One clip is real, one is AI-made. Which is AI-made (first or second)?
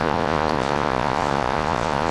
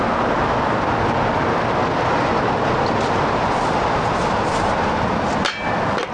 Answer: first